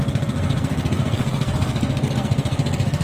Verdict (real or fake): fake